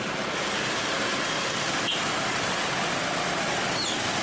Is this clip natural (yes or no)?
yes